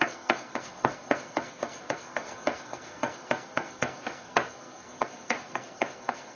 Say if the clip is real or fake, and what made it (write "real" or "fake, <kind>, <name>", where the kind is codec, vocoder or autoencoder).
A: fake, codec, SNAC